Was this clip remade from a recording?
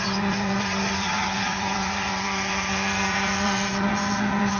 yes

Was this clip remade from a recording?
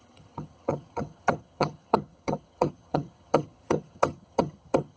yes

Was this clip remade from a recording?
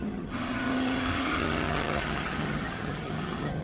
yes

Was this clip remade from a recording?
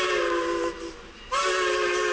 no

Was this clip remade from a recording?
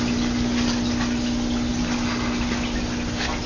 no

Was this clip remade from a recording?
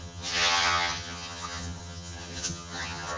yes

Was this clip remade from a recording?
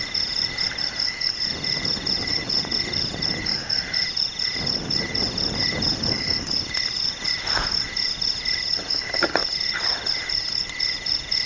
no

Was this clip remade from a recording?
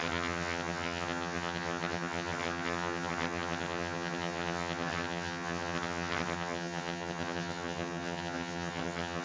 yes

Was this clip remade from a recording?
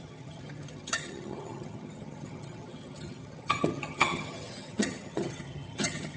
yes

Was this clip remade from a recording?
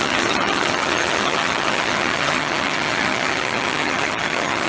yes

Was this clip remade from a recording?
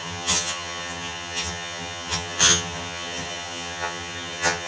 yes